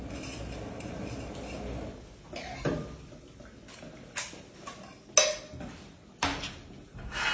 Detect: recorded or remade recorded